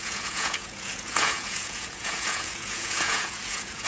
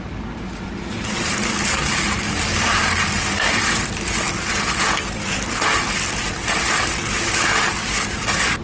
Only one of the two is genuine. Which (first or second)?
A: second